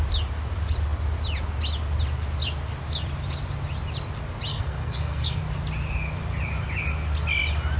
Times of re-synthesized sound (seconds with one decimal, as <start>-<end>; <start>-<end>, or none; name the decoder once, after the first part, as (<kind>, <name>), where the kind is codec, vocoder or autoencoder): 4.5-5.4 (codec, SNAC)